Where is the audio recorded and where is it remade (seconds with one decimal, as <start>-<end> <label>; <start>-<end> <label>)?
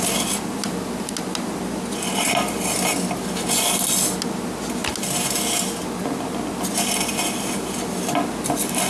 0.0-8.9 recorded